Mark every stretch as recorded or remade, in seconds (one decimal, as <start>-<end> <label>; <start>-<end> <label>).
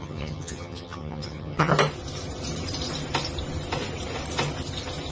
0.0-1.7 remade; 1.7-5.1 recorded